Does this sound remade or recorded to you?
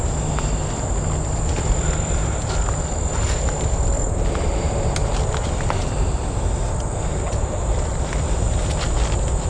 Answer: recorded